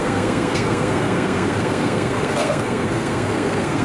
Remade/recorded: remade